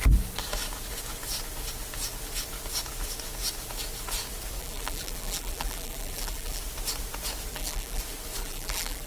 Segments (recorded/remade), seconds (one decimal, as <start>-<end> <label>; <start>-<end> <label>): 0.0-4.6 recorded; 4.6-6.6 remade; 6.6-7.5 recorded; 7.5-8.0 remade; 8.0-8.4 recorded; 8.4-9.1 remade